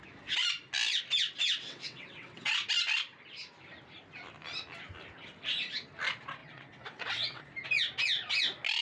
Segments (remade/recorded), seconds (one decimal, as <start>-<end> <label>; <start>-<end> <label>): 0.0-1.4 recorded; 1.4-2.5 remade; 2.5-6.4 recorded; 6.4-7.4 remade; 7.4-8.8 recorded